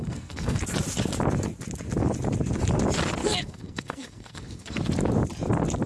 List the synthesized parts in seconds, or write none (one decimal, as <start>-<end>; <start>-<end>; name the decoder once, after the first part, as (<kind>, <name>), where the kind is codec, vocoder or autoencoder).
0.0-0.6 (codec, SNAC); 3.2-4.8